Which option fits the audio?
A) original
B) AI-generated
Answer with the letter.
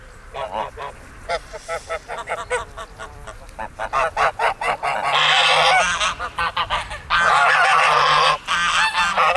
A